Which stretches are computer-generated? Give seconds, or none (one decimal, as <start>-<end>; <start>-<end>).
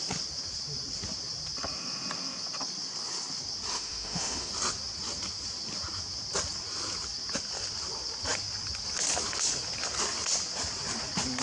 3.7-4.5